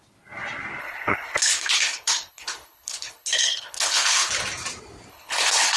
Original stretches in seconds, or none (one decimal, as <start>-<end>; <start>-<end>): 0.0-0.8; 4.3-5.1